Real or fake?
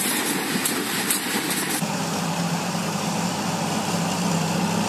fake